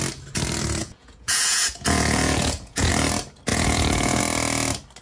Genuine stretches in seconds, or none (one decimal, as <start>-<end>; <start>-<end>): 0.0-0.8; 2.9-3.5; 4.2-5.0